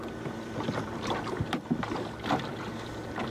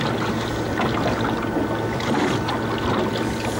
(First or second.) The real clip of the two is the second